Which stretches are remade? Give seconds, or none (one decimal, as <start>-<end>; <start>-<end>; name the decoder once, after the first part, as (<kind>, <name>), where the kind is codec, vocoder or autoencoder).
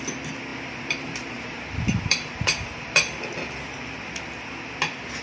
0.5-3.6 (vocoder, BigVGAN v2)